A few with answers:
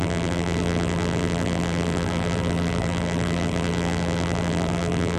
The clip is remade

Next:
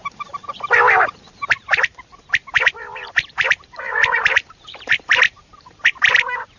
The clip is remade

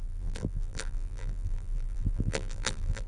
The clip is remade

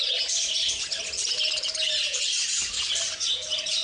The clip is recorded